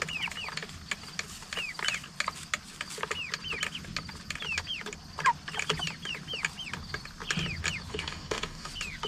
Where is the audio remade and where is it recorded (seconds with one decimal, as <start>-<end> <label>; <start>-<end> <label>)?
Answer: 0.0-7.9 recorded; 7.9-8.7 remade; 8.7-9.1 recorded